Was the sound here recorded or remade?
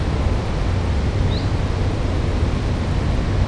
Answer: recorded